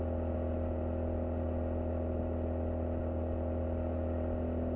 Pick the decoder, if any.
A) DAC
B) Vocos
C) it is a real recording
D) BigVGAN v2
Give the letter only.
C